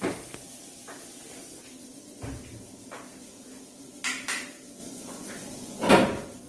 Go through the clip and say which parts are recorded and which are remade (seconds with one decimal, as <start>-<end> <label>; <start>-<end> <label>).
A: 0.0-4.8 recorded; 4.8-5.9 remade; 5.9-6.5 recorded